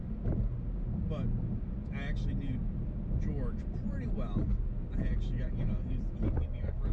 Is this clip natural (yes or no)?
yes